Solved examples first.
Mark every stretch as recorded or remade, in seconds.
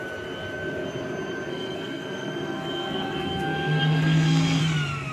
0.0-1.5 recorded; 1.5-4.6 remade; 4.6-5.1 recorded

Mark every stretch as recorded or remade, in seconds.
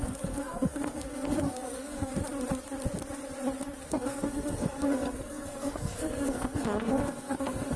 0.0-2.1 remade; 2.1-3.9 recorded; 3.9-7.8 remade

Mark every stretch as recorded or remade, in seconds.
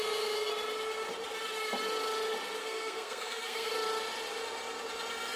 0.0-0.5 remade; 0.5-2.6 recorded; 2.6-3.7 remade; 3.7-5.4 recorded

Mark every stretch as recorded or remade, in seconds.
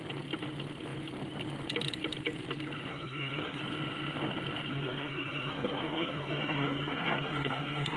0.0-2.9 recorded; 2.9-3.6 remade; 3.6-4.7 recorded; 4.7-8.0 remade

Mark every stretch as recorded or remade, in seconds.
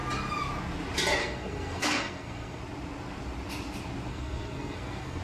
0.0-1.2 recorded; 1.2-2.6 remade; 2.6-4.1 recorded; 4.1-5.2 remade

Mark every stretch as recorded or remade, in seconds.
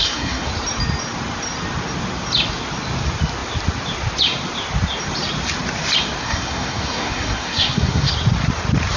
0.0-0.5 remade; 0.5-6.2 recorded; 6.2-8.1 remade; 8.1-9.0 recorded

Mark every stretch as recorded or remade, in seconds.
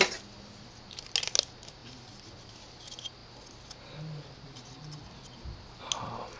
0.0-6.4 recorded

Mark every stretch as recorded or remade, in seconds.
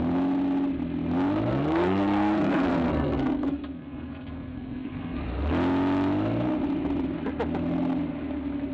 0.0-1.5 recorded; 1.5-5.2 remade; 5.2-8.7 recorded